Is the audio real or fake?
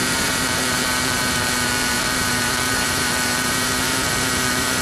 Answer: fake